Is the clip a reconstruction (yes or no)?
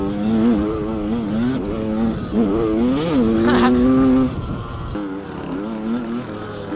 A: no